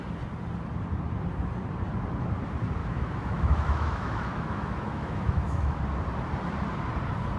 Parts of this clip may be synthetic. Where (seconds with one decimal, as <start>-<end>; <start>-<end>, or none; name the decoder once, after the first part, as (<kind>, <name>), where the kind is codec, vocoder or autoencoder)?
2.8-5.8 (autoencoder, DAC-VAE)